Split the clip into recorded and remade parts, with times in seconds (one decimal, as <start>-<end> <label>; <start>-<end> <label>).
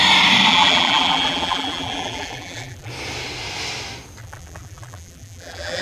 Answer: 0.0-0.5 recorded; 0.5-2.9 remade; 2.9-4.2 recorded; 4.2-5.8 remade